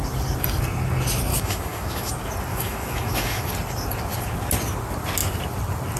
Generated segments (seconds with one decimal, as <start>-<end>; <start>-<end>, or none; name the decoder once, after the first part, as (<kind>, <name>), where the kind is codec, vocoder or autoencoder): 1.3-2.1 (autoencoder, DAC-VAE); 2.5-3.5